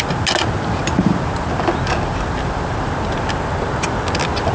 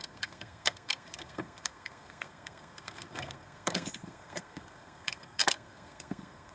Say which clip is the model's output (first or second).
second